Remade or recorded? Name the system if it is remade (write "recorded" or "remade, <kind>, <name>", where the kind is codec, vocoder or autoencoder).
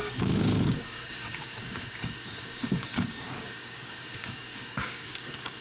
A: remade, codec, DAC